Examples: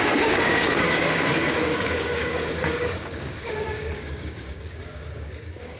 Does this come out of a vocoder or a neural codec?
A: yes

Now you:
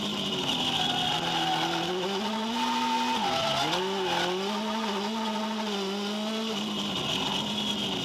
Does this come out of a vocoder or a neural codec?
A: no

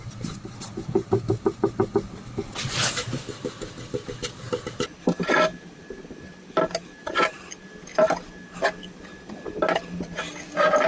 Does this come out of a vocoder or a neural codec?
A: no